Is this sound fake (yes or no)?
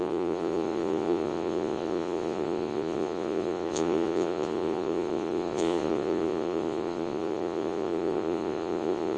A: yes